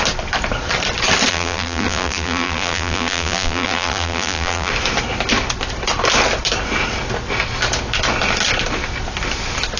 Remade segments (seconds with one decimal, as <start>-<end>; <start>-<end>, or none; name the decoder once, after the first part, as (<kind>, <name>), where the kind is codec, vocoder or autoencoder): 1.3-4.7 (vocoder, BigVGAN v2)